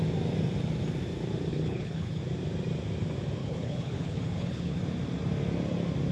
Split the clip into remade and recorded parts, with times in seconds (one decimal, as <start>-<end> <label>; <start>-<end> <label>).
0.0-1.5 recorded; 1.5-2.2 remade; 2.2-3.4 recorded; 3.4-4.8 remade; 4.8-6.1 recorded